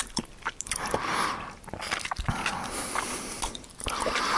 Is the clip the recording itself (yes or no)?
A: yes